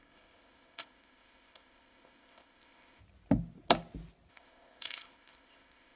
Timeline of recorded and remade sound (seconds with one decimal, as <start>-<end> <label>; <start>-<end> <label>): 0.0-3.0 remade; 3.0-4.3 recorded; 4.3-6.0 remade